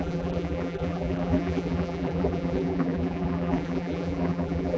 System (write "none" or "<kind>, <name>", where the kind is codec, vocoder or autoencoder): vocoder, BigVGAN v2